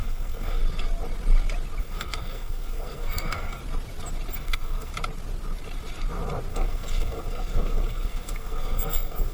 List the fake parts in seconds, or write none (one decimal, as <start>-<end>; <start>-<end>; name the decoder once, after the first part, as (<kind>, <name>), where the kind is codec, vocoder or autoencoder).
0.0-0.6 (codec, SNAC); 1.8-3.6; 4.4-4.9; 6.5-9.3